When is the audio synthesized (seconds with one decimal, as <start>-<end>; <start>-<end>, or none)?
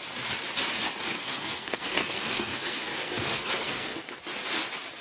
1.1-4.1